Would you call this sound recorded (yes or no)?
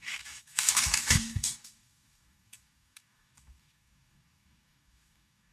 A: no